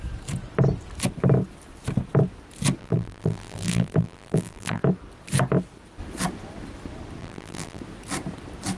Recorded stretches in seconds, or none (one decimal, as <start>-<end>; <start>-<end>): 0.0-2.8; 4.8-7.2; 7.8-8.8

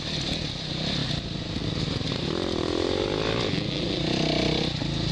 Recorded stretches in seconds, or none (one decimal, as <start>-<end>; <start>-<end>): 0.0-5.1